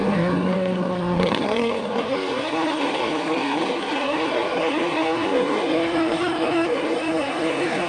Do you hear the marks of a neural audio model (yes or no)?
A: yes